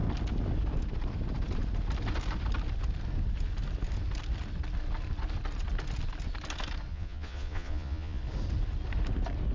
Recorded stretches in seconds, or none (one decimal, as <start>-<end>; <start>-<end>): 0.0-6.9; 8.2-9.5